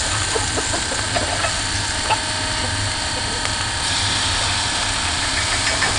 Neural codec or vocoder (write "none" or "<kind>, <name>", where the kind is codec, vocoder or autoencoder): none